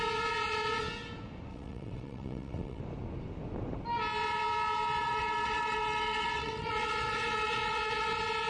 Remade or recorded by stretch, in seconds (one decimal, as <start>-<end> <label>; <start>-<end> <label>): 0.0-1.5 recorded; 1.5-2.8 remade; 2.8-5.0 recorded; 5.0-8.1 remade; 8.1-8.5 recorded